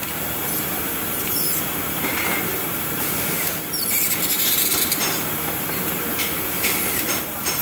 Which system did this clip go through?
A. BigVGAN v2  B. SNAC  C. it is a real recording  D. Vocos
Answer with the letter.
A